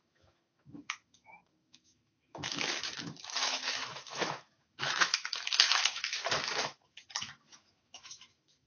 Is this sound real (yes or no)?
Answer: no